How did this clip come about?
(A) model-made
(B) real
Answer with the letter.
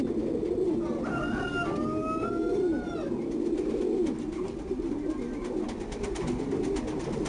B